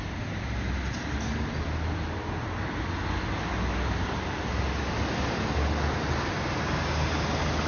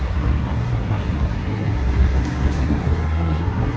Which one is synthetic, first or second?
second